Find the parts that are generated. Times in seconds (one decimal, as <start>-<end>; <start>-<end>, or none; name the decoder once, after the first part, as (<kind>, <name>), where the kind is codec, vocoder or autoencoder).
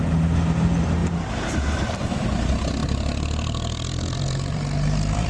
2.8-5.3 (vocoder, BigVGAN v2)